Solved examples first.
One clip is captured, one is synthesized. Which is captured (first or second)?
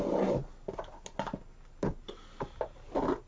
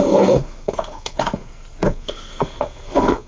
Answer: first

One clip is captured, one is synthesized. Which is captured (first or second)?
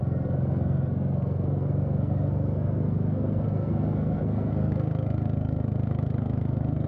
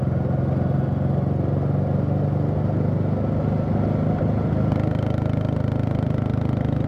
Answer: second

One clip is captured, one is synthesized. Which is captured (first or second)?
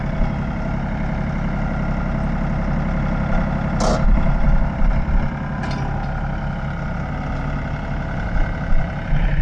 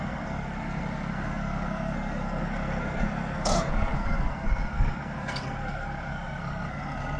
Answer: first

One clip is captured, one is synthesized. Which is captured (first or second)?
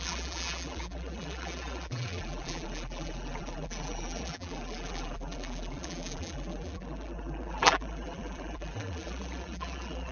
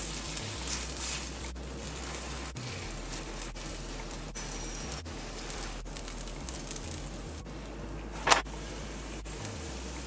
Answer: second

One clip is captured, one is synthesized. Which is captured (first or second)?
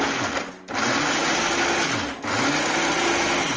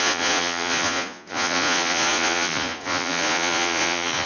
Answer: first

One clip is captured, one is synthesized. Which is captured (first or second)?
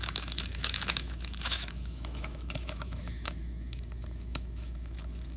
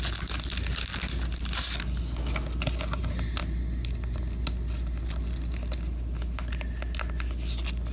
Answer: second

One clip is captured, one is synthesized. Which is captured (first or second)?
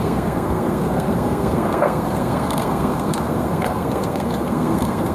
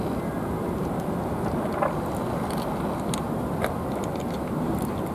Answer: second